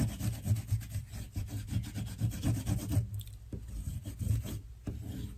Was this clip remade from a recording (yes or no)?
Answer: no